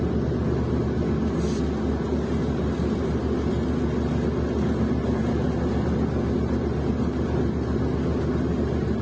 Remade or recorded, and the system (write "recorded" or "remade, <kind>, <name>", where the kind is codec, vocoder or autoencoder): recorded